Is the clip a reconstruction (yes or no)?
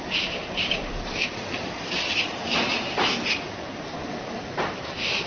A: yes